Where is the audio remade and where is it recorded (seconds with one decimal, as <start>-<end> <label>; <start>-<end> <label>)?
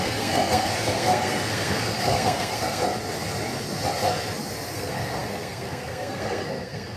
0.0-2.8 remade; 2.8-4.7 recorded; 4.7-7.0 remade